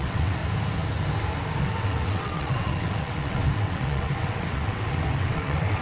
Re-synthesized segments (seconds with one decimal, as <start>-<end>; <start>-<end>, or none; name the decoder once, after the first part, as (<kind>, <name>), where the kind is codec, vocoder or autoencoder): 0.0-0.4 (vocoder, WaveNeXt); 1.6-5.8